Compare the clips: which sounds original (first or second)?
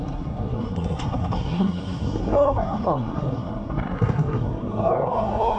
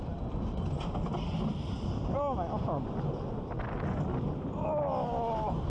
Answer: second